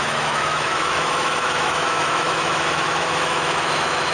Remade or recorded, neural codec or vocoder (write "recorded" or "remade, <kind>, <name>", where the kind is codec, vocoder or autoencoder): remade, autoencoder, DAC-VAE